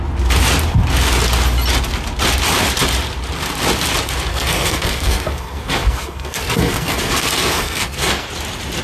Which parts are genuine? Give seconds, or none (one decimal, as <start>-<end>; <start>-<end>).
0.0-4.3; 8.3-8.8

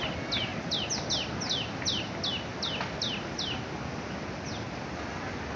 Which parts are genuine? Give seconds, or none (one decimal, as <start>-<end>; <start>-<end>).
0.0-5.6

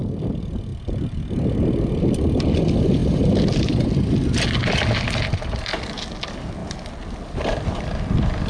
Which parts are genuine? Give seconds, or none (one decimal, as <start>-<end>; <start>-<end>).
0.0-8.5